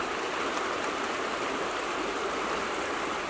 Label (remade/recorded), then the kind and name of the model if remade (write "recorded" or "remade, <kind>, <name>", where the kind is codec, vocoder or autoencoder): remade, vocoder, BigVGAN v2